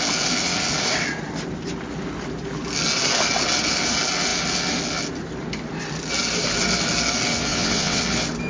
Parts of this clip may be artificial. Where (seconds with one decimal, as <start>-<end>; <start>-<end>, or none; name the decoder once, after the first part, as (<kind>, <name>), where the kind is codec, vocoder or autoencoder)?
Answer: 7.5-8.0 (vocoder, WaveNeXt)